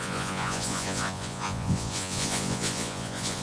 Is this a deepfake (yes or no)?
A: yes